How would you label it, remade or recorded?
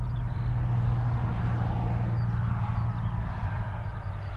recorded